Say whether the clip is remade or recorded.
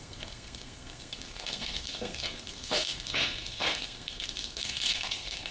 remade